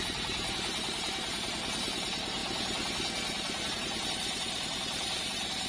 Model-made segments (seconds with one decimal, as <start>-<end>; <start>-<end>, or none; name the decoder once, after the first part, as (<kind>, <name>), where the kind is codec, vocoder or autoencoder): 0.0-2.4 (vocoder, BigVGAN v2); 3.7-5.7